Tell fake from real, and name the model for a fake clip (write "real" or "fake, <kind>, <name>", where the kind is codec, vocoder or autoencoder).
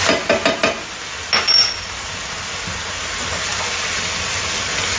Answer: real